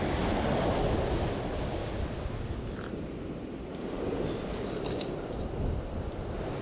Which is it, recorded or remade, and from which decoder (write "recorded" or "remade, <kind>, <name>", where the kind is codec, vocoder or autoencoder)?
recorded